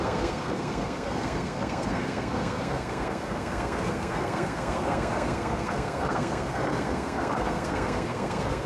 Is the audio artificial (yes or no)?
yes